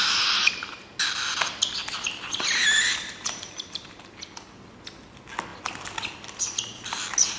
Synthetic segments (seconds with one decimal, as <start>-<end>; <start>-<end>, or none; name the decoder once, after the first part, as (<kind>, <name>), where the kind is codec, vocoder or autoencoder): 0.4-0.9 (vocoder, BigVGAN v2); 2.6-4.0